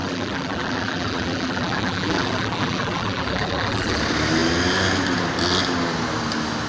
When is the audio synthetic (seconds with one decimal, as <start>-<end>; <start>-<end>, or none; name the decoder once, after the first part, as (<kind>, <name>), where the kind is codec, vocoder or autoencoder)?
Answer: 0.0-4.0 (vocoder, BigVGAN v2)